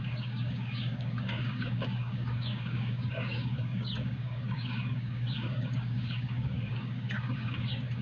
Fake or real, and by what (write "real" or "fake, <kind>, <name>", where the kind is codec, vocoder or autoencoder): fake, codec, DAC